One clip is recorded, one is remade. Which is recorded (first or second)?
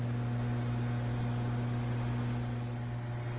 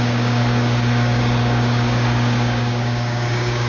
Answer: first